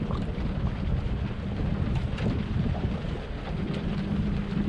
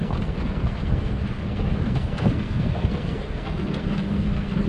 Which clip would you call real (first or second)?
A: first